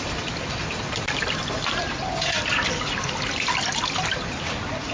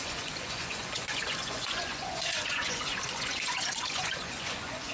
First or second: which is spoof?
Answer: second